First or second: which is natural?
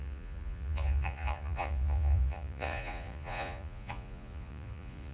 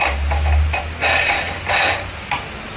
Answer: second